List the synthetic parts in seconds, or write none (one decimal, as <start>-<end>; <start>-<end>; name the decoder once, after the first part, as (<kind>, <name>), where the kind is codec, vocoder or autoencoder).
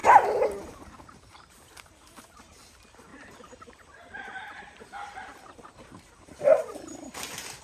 0.0-2.7 (vocoder, BigVGAN v2); 3.1-7.6